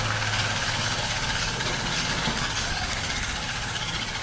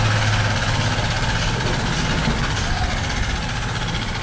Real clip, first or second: second